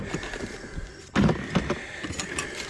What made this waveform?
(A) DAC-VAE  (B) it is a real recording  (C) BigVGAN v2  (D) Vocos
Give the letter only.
B